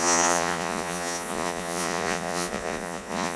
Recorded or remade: remade